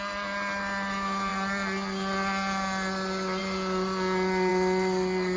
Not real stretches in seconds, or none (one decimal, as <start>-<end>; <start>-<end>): none